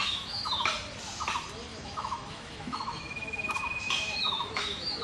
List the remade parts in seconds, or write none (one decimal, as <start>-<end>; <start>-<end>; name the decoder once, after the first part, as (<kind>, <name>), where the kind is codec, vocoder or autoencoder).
0.0-0.7 (autoencoder, DAC-VAE); 1.7-5.0